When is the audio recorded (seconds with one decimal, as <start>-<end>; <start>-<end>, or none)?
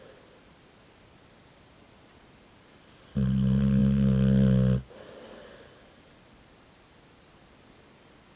0.0-8.4